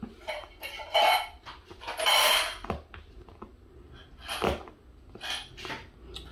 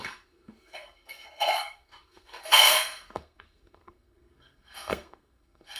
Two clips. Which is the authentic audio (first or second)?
first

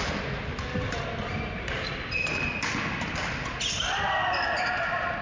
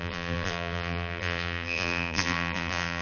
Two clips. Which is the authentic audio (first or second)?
first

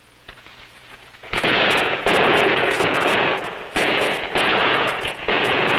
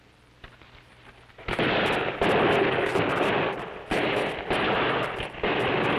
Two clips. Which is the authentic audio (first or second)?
second